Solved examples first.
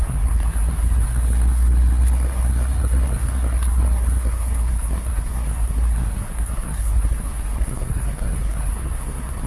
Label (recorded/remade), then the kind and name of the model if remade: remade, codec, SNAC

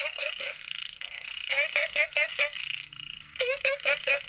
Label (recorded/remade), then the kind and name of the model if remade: remade, codec, SNAC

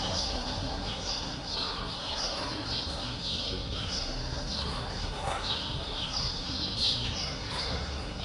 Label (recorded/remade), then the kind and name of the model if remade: remade, codec, SNAC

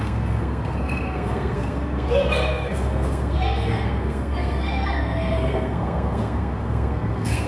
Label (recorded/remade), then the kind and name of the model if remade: remade, codec, SNAC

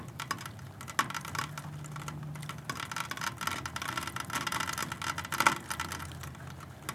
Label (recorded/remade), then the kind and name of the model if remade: recorded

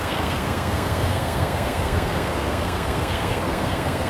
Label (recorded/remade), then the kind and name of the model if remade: remade, codec, SNAC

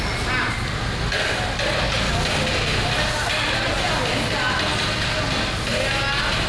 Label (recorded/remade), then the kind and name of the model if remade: recorded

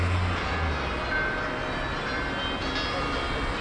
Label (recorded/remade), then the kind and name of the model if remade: recorded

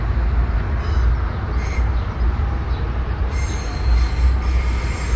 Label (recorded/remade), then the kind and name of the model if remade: recorded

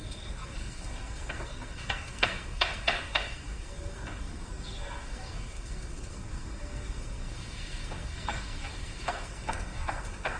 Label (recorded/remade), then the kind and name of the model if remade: remade, codec, SNAC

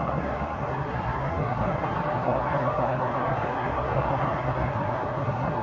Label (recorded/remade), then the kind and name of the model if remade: remade, codec, SNAC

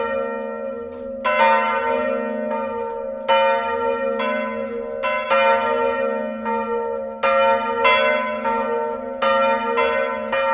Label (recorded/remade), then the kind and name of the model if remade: recorded